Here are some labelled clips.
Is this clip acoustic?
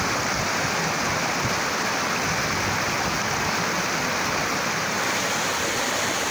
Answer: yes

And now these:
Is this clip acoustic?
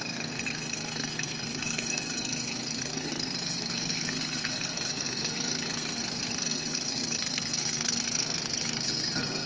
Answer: no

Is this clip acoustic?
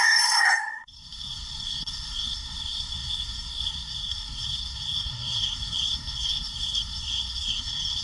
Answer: no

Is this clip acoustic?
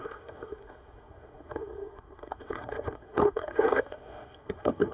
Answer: no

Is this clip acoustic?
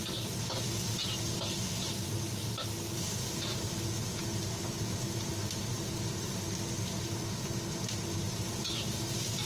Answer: yes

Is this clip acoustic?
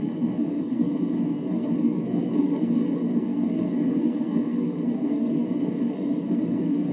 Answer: no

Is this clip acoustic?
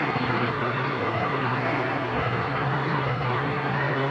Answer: no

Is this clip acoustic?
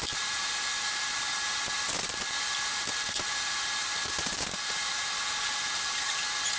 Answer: yes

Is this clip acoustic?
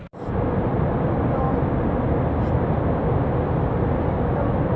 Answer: yes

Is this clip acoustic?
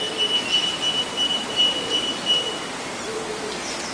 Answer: yes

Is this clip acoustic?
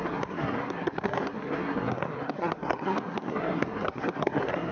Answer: no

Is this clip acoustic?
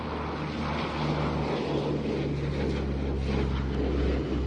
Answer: yes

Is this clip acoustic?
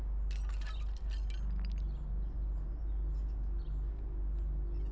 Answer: yes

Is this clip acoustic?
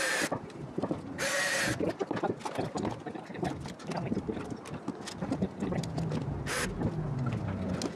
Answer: yes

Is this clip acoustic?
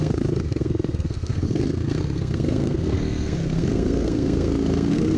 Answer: no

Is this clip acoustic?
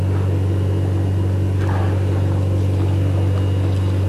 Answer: yes